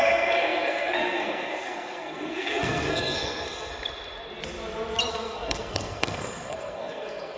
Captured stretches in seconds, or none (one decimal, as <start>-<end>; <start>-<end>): 3.7-5.1